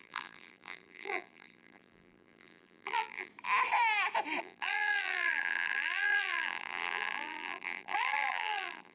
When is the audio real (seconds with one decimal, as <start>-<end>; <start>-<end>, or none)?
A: 3.3-4.4